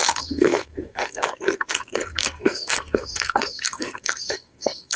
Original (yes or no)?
no